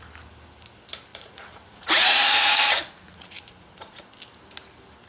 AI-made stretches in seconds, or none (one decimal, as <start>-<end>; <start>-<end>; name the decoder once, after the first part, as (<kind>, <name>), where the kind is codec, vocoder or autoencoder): 1.1-4.0 (vocoder, Vocos)